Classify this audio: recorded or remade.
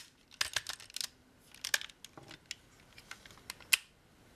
recorded